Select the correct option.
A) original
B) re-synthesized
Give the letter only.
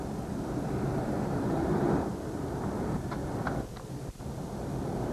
A